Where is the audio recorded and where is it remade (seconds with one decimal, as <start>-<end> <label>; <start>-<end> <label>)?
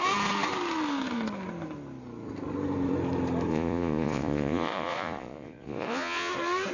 0.0-3.5 recorded; 3.5-6.3 remade; 6.3-6.7 recorded